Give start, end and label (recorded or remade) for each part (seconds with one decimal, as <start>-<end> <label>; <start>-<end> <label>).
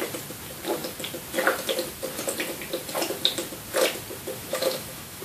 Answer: 0.0-4.4 recorded; 4.4-5.2 remade